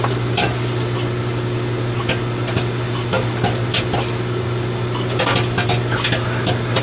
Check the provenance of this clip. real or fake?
real